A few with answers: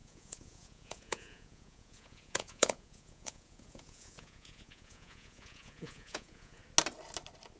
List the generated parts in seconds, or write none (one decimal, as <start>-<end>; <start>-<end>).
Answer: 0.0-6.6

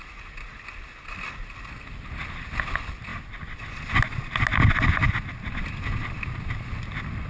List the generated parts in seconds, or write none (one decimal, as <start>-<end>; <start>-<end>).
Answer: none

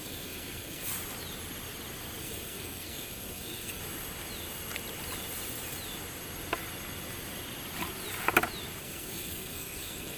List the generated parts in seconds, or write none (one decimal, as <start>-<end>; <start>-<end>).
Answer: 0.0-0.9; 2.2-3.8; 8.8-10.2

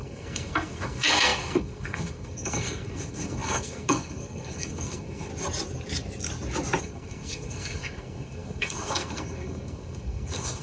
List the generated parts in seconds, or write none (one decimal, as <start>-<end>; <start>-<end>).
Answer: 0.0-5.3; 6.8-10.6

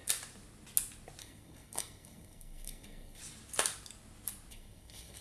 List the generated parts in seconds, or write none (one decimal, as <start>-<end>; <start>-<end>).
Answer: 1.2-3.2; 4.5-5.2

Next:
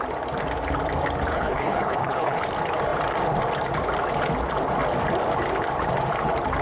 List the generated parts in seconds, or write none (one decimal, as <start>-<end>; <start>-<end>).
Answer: 1.3-2.4

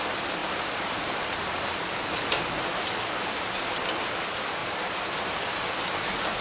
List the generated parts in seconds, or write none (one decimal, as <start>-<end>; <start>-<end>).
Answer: 0.4-3.3; 4.6-5.4

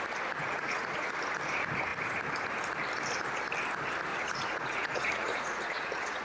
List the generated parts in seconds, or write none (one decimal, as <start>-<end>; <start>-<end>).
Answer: 0.4-1.1; 4.1-6.2